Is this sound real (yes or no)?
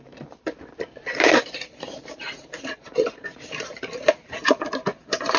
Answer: no